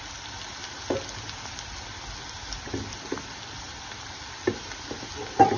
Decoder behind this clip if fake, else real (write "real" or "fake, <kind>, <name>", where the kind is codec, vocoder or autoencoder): real